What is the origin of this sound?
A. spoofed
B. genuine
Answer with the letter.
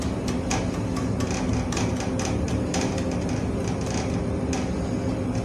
B